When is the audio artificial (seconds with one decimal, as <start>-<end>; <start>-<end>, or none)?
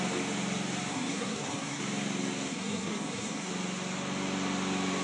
0.9-1.8; 2.5-3.5